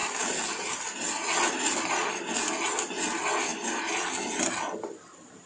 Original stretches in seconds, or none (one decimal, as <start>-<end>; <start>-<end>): 0.0-5.5